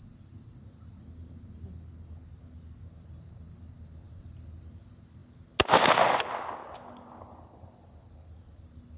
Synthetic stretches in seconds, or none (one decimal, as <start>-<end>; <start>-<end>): none